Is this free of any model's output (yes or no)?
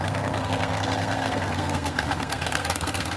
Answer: no